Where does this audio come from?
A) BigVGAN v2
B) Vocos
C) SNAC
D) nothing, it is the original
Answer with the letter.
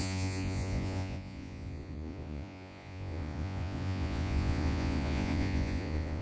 B